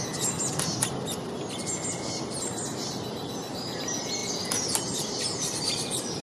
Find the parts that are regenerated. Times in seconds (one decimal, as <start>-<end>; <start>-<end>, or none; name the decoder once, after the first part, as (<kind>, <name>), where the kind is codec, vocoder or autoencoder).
4.2-6.2 (vocoder, BigVGAN v2)